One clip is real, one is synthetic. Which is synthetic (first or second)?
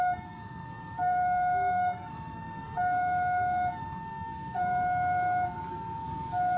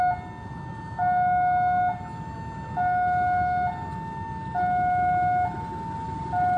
first